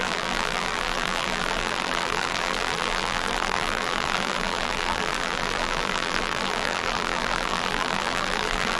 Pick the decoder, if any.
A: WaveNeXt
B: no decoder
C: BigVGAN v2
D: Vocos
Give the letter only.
C